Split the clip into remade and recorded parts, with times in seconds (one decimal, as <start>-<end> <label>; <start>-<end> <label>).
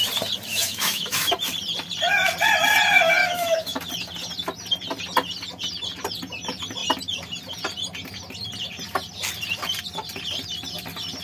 0.0-0.5 recorded; 0.5-1.3 remade; 1.3-3.2 recorded; 3.2-3.8 remade; 3.8-11.2 recorded